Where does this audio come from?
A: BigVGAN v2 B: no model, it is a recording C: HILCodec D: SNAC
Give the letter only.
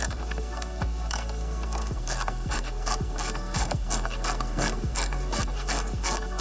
D